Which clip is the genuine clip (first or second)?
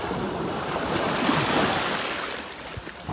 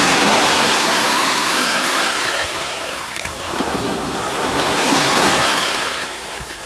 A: first